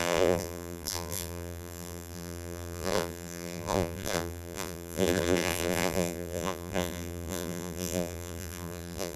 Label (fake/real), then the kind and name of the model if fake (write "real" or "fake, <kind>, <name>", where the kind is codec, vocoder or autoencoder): fake, vocoder, BigVGAN v2